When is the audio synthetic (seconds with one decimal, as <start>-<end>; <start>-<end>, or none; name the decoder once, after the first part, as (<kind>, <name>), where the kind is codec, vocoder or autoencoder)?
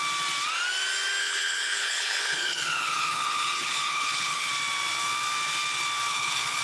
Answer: 1.2-4.5 (codec, HILCodec); 6.1-6.6